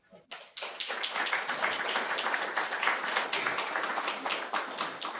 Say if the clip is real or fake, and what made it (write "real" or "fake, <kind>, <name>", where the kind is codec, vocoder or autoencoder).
real